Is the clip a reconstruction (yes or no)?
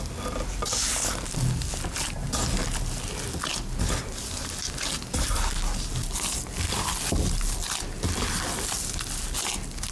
no